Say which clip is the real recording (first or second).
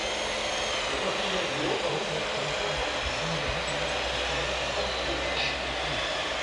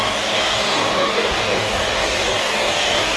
first